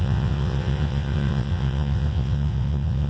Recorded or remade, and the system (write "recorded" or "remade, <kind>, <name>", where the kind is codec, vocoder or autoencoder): remade, vocoder, WaveNeXt